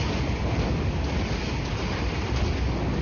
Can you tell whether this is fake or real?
real